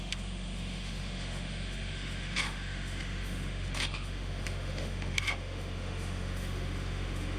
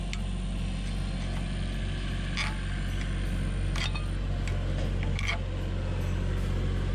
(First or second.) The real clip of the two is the second